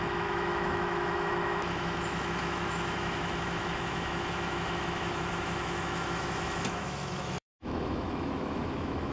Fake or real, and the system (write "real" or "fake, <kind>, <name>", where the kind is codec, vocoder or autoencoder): fake, autoencoder, DAC-VAE